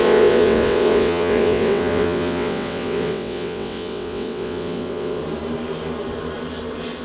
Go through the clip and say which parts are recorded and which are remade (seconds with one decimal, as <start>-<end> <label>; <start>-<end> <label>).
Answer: 0.0-5.2 remade; 5.2-7.0 recorded